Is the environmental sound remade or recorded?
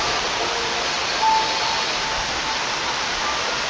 recorded